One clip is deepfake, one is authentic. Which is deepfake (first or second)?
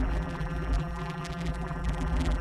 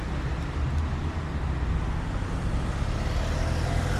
first